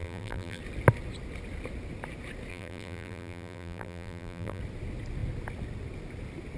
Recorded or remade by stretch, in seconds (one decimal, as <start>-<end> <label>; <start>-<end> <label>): 0.0-0.6 remade; 0.6-2.5 recorded; 2.5-4.6 remade; 4.6-6.6 recorded